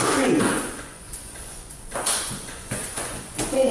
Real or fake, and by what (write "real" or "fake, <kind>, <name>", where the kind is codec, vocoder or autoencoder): fake, vocoder, Vocos